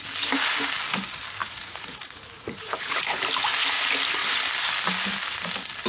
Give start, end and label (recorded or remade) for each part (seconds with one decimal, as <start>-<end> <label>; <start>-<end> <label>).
0.0-1.4 recorded; 1.4-3.2 remade; 3.2-5.9 recorded